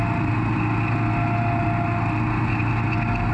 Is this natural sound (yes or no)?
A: yes